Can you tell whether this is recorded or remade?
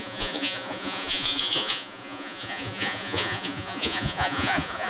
remade